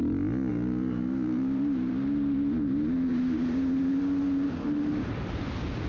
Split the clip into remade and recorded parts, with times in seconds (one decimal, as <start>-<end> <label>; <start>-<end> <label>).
0.0-0.5 recorded; 0.5-1.9 remade; 1.9-3.1 recorded; 3.1-4.0 remade; 4.0-5.9 recorded